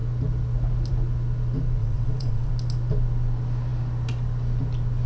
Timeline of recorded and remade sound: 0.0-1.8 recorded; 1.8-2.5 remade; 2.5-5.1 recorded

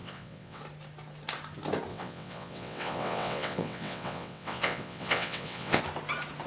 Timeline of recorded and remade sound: 0.0-0.6 remade; 0.6-1.9 recorded; 1.9-5.8 remade; 5.8-6.5 recorded

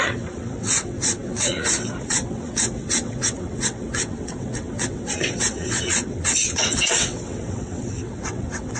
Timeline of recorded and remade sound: 0.0-8.8 remade

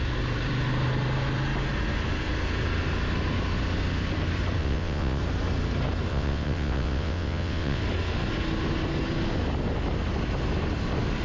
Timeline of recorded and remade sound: 0.0-4.6 recorded; 4.6-5.2 remade; 5.2-6.1 recorded; 6.1-7.8 remade; 7.8-11.2 recorded